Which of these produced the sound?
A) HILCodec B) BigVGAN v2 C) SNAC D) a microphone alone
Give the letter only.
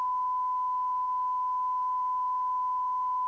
D